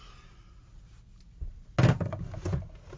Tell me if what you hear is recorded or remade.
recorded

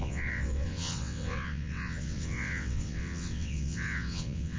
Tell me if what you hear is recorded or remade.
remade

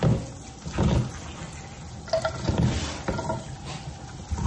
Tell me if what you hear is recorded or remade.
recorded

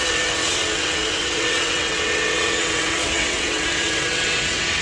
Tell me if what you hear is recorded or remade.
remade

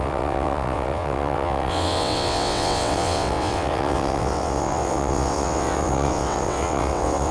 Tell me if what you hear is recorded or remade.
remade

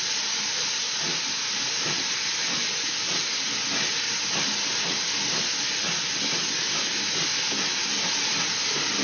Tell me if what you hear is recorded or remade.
recorded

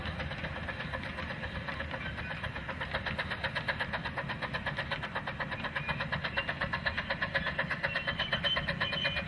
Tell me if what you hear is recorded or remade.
recorded